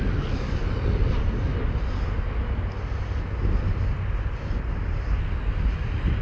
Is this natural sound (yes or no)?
yes